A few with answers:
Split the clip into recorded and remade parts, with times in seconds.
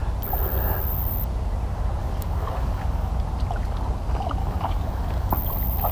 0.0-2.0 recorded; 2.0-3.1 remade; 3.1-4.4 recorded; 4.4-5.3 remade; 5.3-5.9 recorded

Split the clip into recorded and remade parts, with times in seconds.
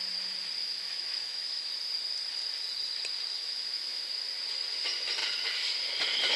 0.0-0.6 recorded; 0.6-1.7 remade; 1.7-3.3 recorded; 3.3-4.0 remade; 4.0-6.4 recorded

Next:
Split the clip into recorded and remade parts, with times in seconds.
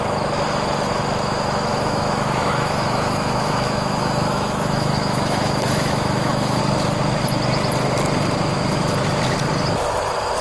0.0-1.7 recorded; 1.7-6.6 remade; 6.6-10.4 recorded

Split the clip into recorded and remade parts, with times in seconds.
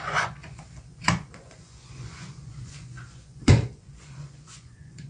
0.0-5.1 remade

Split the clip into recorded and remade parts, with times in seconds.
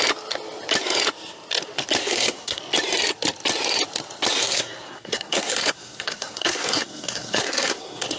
0.0-2.0 recorded; 2.0-2.6 remade; 2.6-4.4 recorded; 4.4-8.2 remade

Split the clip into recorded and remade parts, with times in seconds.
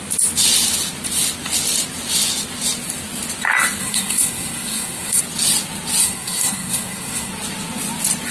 0.0-3.8 recorded; 3.8-5.2 remade; 5.2-6.0 recorded; 6.0-7.3 remade; 7.3-8.3 recorded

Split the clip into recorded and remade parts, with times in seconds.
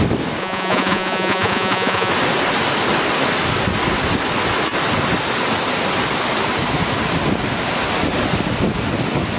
0.0-0.4 recorded; 0.4-2.1 remade; 2.1-9.4 recorded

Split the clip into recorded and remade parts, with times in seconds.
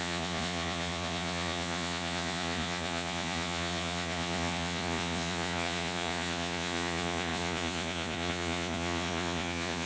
0.0-9.9 remade